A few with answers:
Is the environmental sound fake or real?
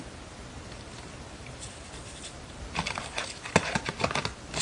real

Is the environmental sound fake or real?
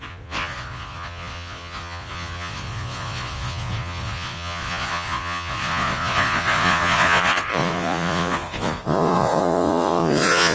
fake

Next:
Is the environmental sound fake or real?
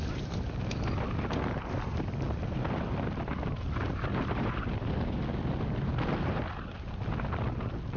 real